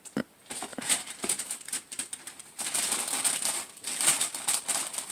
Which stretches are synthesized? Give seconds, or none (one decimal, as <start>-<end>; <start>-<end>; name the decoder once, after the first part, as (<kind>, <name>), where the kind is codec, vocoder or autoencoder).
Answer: 0.7-3.0 (vocoder, BigVGAN v2)